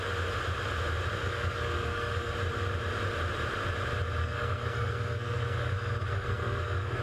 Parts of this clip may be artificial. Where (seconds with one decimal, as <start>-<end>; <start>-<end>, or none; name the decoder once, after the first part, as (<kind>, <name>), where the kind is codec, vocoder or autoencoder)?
1.2-2.3 (codec, SNAC); 4.2-7.0